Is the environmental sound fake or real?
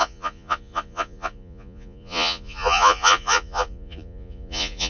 fake